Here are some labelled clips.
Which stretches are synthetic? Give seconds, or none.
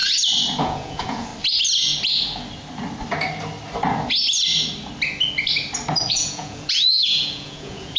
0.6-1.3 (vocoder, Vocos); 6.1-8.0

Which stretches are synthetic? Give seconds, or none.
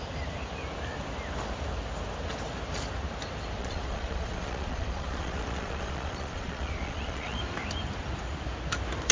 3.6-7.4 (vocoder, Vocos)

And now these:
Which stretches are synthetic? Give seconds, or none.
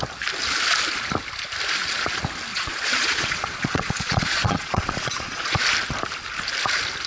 2.5-5.6 (vocoder, Vocos)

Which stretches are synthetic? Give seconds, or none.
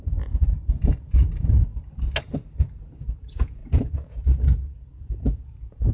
0.0-1.7 (vocoder, Vocos); 3.0-5.9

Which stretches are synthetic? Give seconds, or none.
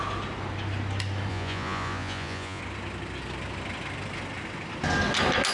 1.3-2.6 (vocoder, Vocos)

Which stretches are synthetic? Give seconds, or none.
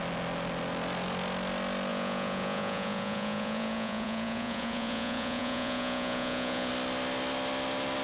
1.9-6.7 (vocoder, Vocos)